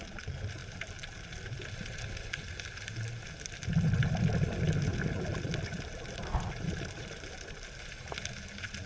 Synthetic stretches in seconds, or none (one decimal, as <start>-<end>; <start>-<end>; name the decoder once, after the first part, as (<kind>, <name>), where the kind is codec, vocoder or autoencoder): none